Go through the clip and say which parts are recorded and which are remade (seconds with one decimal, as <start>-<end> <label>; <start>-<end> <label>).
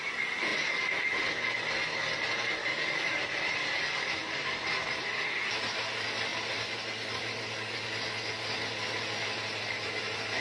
0.0-2.6 recorded; 2.6-3.2 remade; 3.2-10.4 recorded